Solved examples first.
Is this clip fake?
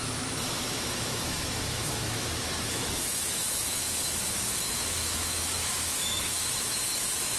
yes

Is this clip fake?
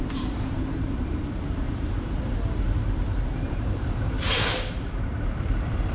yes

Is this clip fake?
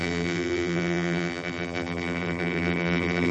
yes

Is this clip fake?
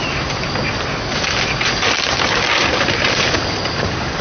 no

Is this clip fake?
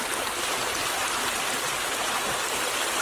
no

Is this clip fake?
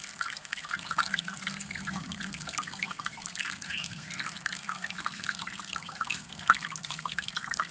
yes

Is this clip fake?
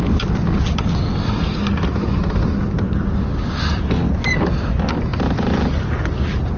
no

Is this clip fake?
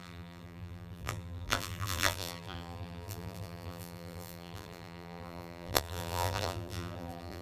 yes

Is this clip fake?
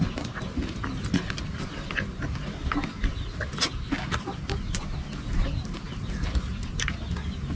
no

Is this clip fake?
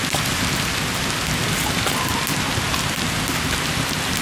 no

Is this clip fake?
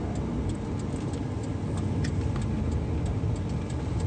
no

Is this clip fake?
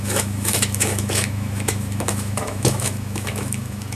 yes